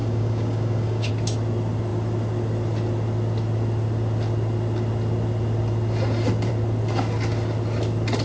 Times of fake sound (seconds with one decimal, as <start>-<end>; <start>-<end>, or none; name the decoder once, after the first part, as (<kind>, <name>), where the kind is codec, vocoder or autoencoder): 0.0-1.1 (codec, DAC)